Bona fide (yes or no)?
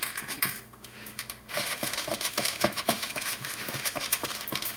no